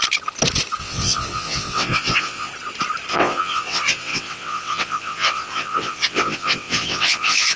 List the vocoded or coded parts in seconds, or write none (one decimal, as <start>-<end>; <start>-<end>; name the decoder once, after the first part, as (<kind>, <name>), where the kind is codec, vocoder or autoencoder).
0.8-2.5 (vocoder, WaveNeXt); 3.1-7.6